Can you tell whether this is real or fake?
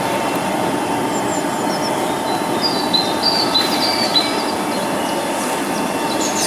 real